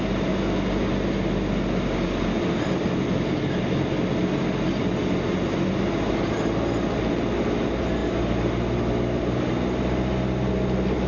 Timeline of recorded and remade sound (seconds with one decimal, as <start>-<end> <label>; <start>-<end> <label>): 0.0-11.1 recorded